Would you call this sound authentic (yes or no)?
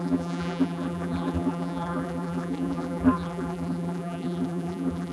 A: no